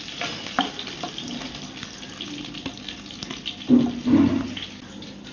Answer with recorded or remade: recorded